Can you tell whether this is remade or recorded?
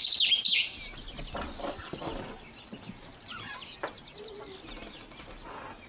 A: recorded